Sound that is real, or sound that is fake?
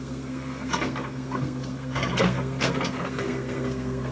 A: fake